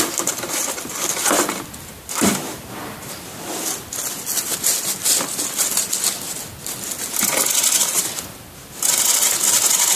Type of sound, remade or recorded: recorded